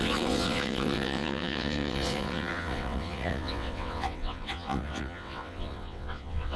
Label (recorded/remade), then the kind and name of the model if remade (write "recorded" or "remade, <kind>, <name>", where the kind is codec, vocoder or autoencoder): remade, vocoder, WaveNeXt